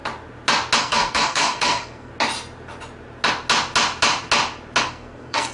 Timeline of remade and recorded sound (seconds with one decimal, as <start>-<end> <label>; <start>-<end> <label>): 0.0-0.8 recorded; 0.8-2.1 remade; 2.1-4.8 recorded; 4.8-5.5 remade

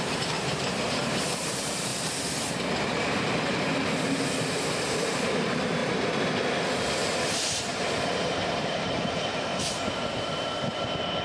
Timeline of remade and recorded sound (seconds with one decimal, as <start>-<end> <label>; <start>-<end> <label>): 0.0-1.9 remade; 1.9-2.8 recorded; 2.8-5.8 remade; 5.8-6.6 recorded; 6.6-11.2 remade

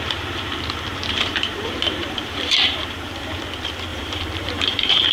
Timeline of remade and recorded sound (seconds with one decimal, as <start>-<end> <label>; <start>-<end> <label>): 0.0-0.9 recorded; 0.9-3.4 remade; 3.4-3.9 recorded; 3.9-5.1 remade

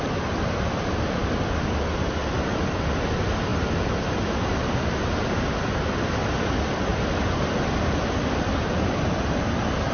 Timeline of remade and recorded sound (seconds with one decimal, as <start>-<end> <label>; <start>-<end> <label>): 0.0-6.9 recorded; 6.9-9.0 remade; 9.0-9.9 recorded

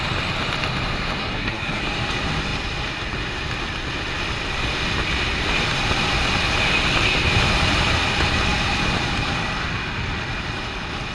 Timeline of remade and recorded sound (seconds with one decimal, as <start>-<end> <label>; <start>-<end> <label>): 0.0-1.2 recorded; 1.2-1.8 remade; 1.8-11.1 recorded

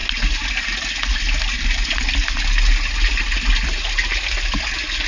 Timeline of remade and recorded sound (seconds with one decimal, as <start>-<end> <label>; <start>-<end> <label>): 0.0-5.1 recorded